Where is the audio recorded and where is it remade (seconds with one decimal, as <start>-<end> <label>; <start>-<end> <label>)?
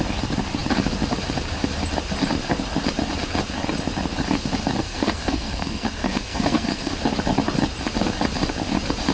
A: 0.0-4.8 recorded; 4.8-6.9 remade; 6.9-9.1 recorded